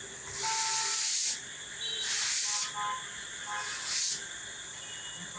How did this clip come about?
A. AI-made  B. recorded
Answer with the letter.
B